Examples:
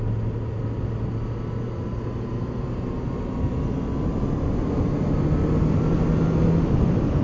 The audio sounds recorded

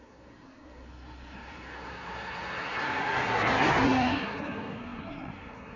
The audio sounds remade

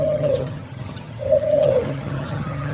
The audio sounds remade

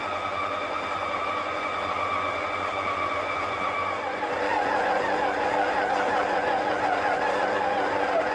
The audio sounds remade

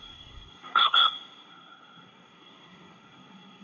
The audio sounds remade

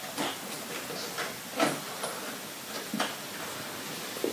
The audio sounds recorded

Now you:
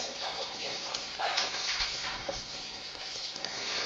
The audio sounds remade